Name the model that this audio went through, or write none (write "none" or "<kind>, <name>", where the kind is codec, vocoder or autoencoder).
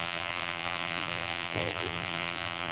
vocoder, BigVGAN v2